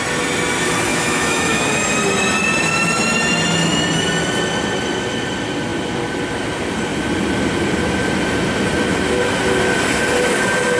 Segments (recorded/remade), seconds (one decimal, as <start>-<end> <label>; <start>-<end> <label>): 0.0-0.9 recorded; 0.9-1.6 remade; 1.6-10.8 recorded